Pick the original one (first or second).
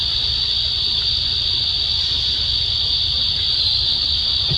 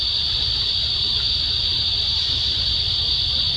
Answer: first